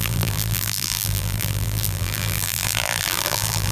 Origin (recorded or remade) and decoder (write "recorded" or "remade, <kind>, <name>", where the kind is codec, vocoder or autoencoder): remade, vocoder, BigVGAN v2